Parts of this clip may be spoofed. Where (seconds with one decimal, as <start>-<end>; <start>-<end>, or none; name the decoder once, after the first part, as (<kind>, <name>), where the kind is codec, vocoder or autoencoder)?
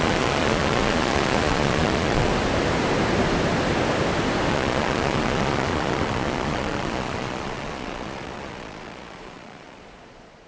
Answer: 0.0-2.3 (vocoder, Vocos); 4.5-10.5